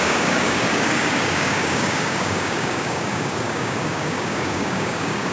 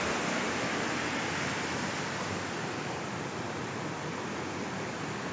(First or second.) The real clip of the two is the second